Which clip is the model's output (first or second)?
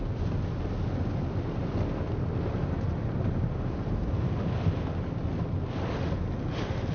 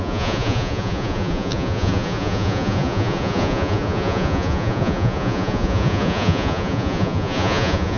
second